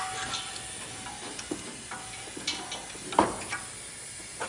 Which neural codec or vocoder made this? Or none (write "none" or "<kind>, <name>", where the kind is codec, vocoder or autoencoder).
none